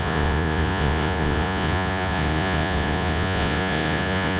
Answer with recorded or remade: remade